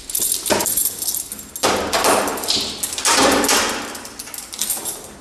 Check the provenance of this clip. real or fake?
real